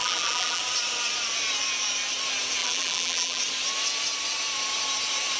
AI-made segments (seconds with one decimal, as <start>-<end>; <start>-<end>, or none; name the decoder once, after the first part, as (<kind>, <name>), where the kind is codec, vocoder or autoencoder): 0.0-0.6 (vocoder, BigVGAN v2); 2.6-3.4